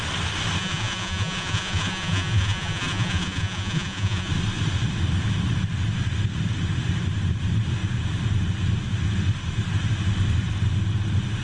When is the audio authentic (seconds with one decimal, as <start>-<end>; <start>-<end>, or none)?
0.0-0.6; 4.3-11.4